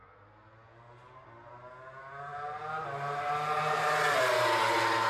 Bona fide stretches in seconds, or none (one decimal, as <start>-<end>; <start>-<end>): 0.0-5.1

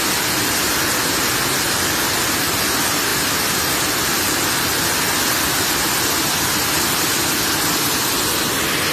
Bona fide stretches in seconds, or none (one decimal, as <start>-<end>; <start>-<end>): 0.0-3.1; 3.9-8.9

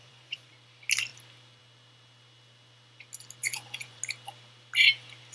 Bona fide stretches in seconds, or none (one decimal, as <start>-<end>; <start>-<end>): 0.5-3.4; 4.0-5.3

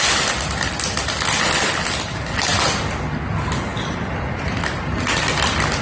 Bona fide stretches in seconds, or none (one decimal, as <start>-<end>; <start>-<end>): 0.0-5.8

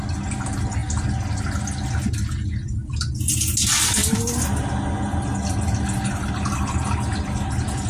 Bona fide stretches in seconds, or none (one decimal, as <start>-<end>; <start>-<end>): 0.0-7.9

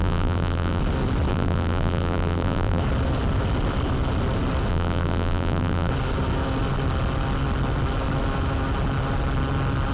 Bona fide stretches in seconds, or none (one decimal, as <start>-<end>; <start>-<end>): 0.8-1.3; 2.8-4.7; 5.9-9.9

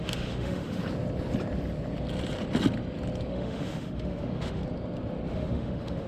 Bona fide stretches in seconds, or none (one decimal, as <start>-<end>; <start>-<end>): 0.8-3.3; 4.6-5.3